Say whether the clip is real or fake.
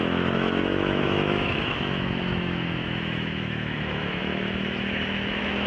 fake